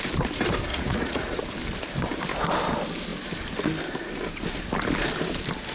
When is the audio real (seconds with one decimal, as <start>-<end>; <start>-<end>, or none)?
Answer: 0.0-0.7; 1.4-5.7